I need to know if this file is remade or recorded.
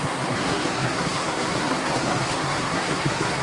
remade